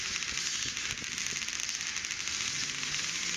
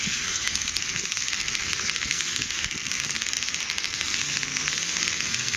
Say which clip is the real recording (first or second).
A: first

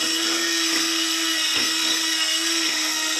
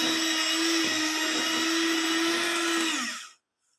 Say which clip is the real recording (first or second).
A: second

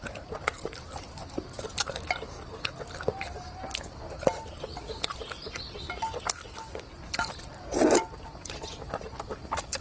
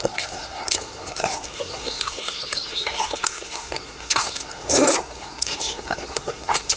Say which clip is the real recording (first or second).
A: first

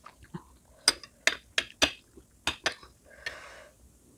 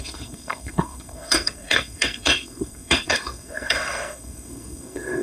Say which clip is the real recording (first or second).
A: first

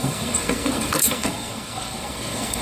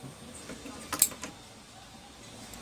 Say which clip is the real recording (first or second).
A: second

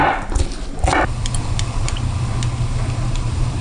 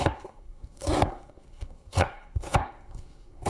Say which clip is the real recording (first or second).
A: first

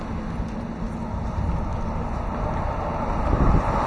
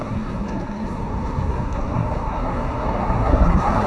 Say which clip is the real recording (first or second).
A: first